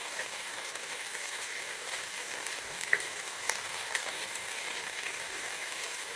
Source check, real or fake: fake